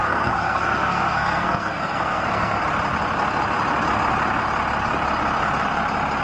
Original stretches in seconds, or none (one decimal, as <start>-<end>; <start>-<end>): 2.6-6.2